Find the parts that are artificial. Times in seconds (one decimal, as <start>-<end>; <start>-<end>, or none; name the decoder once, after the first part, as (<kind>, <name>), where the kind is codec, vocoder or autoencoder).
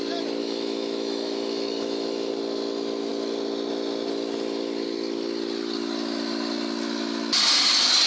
0.4-2.3 (autoencoder, DAC-VAE)